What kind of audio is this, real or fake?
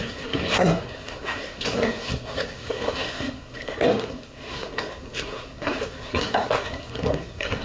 fake